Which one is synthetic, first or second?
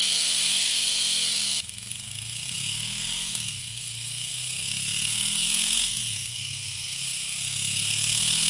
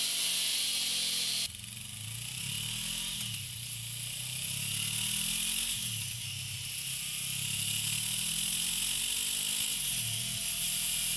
first